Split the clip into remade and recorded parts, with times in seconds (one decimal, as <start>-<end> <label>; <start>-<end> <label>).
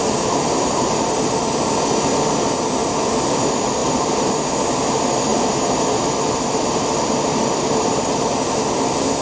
0.0-3.8 recorded; 3.8-4.3 remade; 4.3-5.3 recorded; 5.3-8.1 remade; 8.1-9.2 recorded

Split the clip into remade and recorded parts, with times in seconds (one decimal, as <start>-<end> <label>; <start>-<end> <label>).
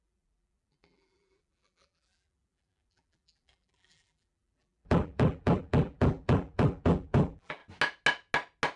0.0-7.6 remade; 7.6-8.8 recorded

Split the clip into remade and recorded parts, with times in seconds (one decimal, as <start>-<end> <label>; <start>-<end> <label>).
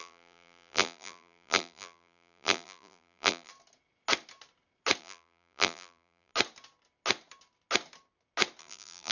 0.0-3.5 remade; 3.5-5.0 recorded; 5.0-6.3 remade; 6.3-8.6 recorded; 8.6-9.1 remade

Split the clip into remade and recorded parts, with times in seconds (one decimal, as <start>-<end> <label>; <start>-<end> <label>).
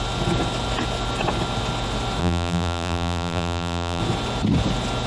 0.0-2.2 recorded; 2.2-4.0 remade; 4.0-5.1 recorded